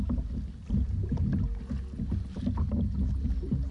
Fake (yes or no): no